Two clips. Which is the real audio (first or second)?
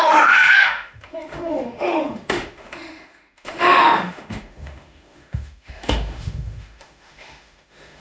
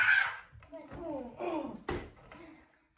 second